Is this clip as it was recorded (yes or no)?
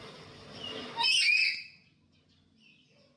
yes